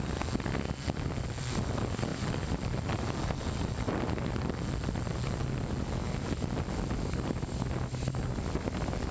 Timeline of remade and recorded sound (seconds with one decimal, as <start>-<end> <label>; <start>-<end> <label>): 0.0-2.1 recorded; 2.1-3.5 remade; 3.5-9.1 recorded